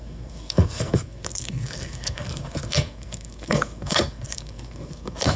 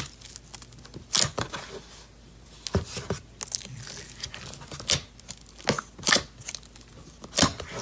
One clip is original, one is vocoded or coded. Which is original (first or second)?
second